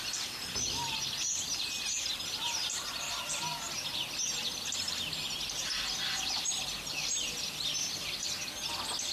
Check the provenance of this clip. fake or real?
real